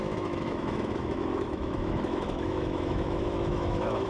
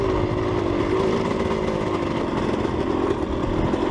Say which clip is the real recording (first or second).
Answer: second